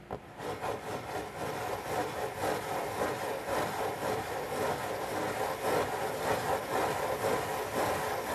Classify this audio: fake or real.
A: real